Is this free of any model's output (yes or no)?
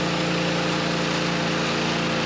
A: yes